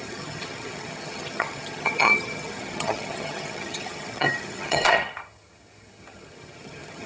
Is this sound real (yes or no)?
no